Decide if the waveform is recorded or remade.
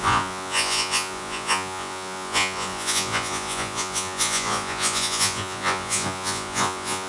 remade